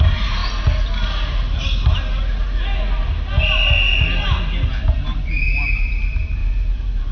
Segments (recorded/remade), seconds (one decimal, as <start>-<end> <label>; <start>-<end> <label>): 0.0-0.4 remade; 0.4-4.7 recorded; 4.7-7.1 remade